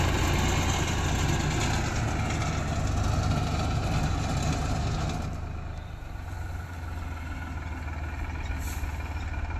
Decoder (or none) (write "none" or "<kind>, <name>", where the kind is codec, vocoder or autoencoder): none